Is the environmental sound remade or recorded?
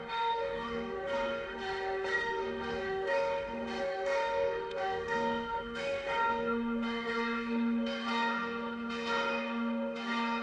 remade